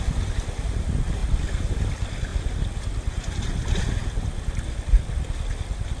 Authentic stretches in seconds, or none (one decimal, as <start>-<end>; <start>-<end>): 0.0-6.0